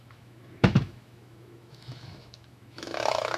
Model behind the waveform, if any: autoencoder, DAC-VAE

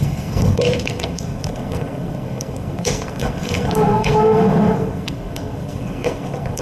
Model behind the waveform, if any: codec, SNAC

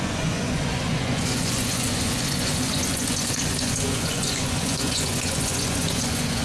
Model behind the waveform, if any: vocoder, Vocos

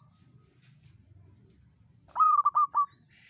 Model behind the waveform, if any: none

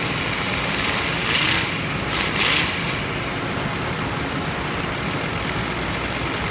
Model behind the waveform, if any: none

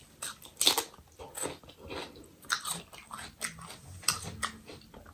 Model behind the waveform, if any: none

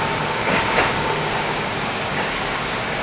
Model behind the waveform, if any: codec, DAC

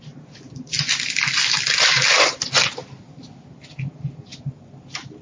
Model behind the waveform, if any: none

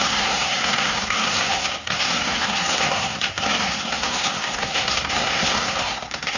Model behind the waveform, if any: codec, SNAC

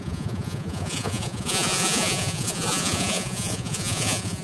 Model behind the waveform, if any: vocoder, Vocos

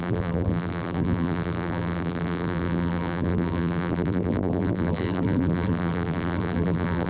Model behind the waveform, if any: vocoder, BigVGAN v2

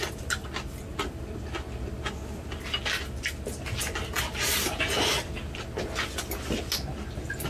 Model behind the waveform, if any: none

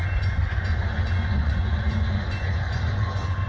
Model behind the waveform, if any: vocoder, Vocos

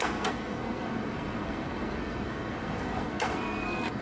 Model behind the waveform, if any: codec, SNAC